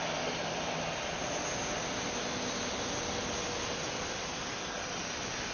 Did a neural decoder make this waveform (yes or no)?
no